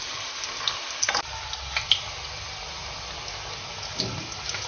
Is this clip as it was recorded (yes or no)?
yes